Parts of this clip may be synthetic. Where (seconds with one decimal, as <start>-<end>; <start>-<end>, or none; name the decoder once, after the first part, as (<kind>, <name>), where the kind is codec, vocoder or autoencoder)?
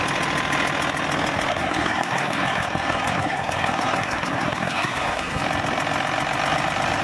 1.5-5.4 (codec, SNAC)